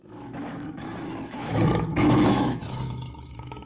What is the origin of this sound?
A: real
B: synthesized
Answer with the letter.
B